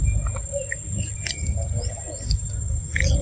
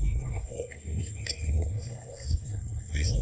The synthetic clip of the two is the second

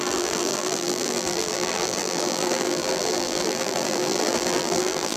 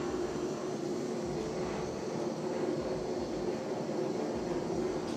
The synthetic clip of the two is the first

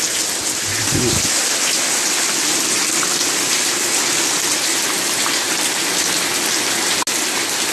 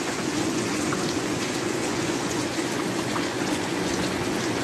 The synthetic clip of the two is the second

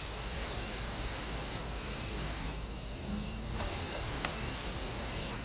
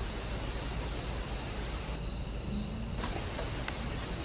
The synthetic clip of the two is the first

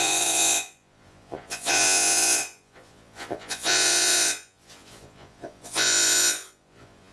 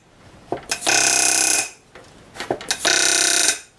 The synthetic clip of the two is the first